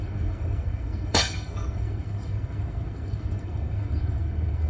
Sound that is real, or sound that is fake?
fake